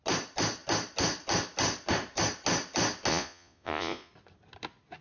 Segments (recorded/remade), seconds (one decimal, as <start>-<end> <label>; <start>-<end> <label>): 0.0-3.1 recorded; 3.1-4.1 remade; 4.1-5.0 recorded